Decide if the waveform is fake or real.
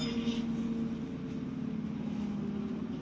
real